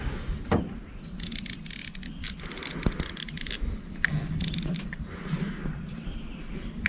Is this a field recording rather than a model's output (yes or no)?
yes